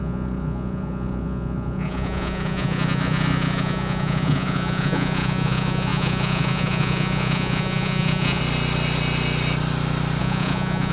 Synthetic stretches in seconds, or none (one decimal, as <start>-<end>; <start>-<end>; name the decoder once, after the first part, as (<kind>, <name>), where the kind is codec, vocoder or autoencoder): 0.0-8.4 (vocoder, Vocos); 10.2-10.9